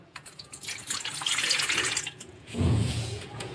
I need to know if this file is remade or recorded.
remade